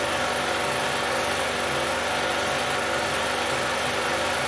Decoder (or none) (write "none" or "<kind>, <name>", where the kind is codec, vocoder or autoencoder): none